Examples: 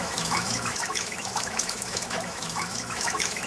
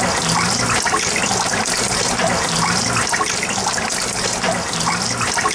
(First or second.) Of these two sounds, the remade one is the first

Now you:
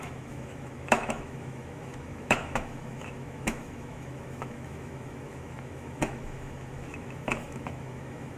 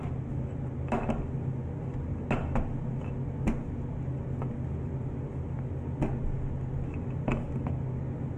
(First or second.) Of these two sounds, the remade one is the first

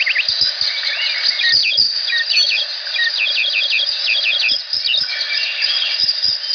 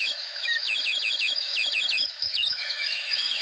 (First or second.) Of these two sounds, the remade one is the second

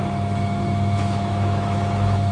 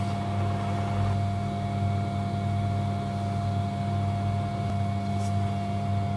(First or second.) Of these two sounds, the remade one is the first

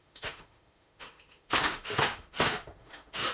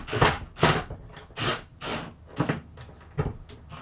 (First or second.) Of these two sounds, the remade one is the first